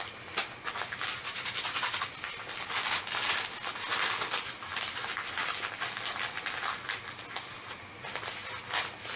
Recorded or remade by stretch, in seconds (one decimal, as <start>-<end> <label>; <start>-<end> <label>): 0.0-9.2 recorded

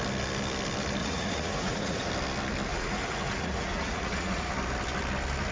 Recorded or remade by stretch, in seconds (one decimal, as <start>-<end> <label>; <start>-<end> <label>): 0.0-1.0 recorded; 1.0-2.1 remade; 2.1-2.7 recorded; 2.7-4.5 remade; 4.5-5.5 recorded

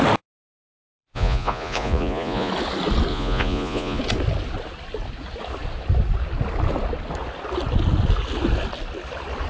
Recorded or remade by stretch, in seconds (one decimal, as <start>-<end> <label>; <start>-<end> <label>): 0.0-0.7 recorded; 0.7-2.5 remade; 2.5-3.1 recorded; 3.1-4.0 remade; 4.0-9.5 recorded